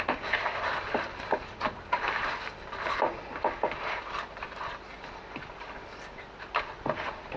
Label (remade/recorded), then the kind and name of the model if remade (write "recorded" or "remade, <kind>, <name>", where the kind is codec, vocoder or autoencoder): recorded